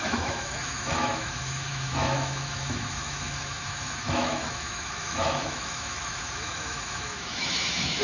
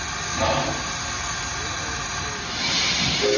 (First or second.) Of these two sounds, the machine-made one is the first